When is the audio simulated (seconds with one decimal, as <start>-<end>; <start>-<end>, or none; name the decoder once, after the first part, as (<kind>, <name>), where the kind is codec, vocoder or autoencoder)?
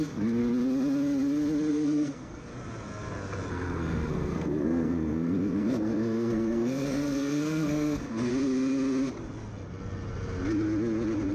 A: 0.0-0.4 (codec, SNAC); 1.7-2.5; 3.5-8.3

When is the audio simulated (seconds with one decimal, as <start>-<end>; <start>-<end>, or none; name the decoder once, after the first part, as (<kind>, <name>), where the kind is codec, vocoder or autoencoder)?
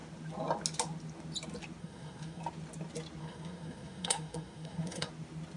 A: 1.8-2.4 (codec, SNAC); 3.2-5.1